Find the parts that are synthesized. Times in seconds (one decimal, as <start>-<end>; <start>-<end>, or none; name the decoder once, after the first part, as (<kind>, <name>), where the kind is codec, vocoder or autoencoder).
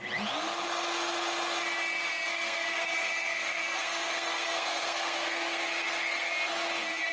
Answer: 2.3-6.3 (codec, SNAC)